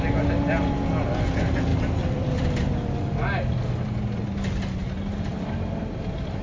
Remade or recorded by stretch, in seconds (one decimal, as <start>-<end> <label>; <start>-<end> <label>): 0.0-1.7 recorded; 1.7-2.6 remade; 2.6-5.3 recorded; 5.3-6.4 remade